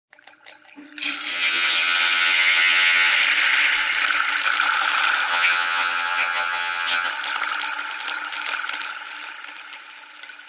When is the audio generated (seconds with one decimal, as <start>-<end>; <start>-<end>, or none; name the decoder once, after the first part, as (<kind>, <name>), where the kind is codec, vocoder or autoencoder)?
1.3-3.1 (vocoder, HiFi-GAN); 5.3-7.1